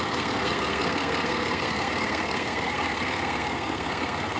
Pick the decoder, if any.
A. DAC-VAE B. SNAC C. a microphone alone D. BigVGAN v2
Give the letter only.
B